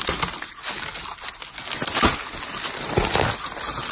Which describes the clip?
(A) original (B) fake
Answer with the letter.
A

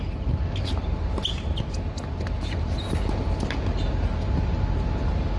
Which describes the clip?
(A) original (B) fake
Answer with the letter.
A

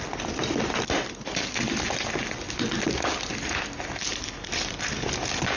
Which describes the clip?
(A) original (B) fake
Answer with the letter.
A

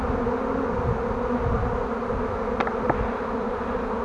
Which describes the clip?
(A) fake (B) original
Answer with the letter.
B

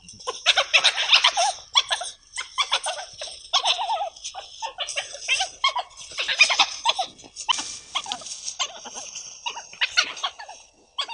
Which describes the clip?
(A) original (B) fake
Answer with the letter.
A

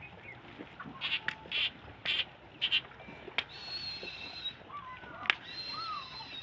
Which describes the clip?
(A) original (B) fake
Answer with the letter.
A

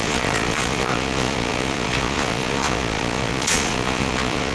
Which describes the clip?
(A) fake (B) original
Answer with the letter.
A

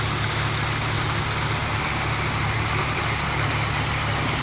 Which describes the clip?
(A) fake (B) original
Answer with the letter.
B